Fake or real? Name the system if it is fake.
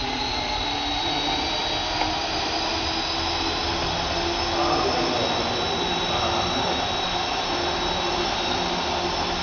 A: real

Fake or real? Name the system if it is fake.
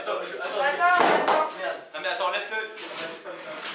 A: real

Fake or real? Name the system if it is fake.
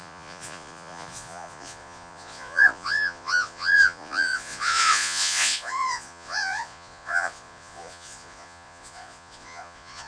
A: fake, vocoder, Vocos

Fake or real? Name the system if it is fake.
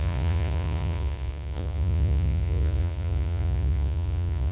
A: fake, vocoder, Vocos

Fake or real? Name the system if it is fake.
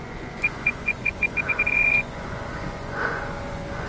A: fake, vocoder, Vocos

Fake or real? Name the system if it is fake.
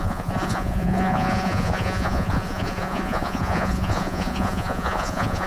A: fake, vocoder, Vocos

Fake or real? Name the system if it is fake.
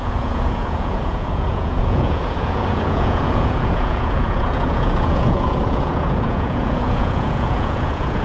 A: fake, vocoder, Vocos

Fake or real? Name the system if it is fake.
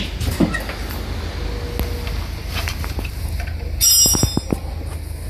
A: real